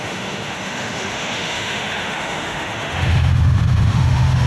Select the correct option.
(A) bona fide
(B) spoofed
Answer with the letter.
B